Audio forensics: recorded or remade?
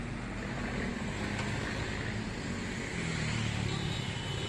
recorded